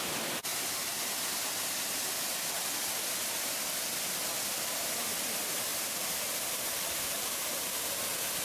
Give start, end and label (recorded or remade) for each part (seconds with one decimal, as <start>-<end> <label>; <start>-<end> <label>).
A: 0.0-0.5 recorded; 0.5-1.3 remade; 1.3-5.7 recorded; 5.7-7.8 remade; 7.8-8.4 recorded